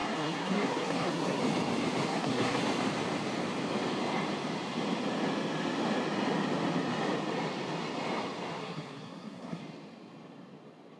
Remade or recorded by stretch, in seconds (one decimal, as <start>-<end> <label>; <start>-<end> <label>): 0.0-1.4 remade; 1.4-2.1 recorded; 2.1-2.6 remade; 2.6-8.6 recorded; 8.6-9.6 remade; 9.6-11.0 recorded

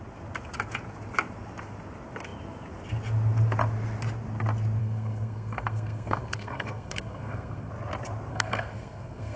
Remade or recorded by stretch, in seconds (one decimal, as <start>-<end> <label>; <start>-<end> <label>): 0.0-4.8 recorded; 4.8-7.7 remade; 7.7-8.3 recorded; 8.3-9.4 remade